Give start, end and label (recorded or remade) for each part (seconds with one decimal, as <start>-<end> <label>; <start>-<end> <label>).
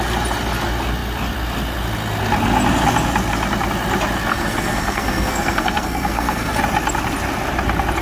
0.0-4.3 recorded; 4.3-6.6 remade; 6.6-8.0 recorded